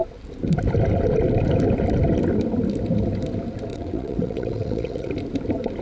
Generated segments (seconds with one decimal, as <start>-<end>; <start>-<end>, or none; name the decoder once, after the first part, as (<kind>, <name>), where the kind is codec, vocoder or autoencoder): 3.7-5.1 (vocoder, WaveNeXt)